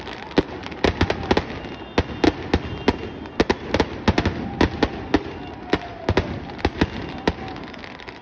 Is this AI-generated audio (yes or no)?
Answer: no